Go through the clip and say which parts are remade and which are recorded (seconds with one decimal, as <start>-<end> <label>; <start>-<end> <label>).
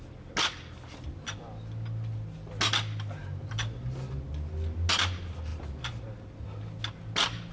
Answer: 0.0-7.5 recorded